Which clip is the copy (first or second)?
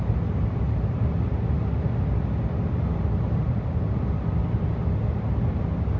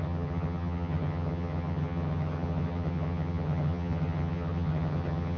second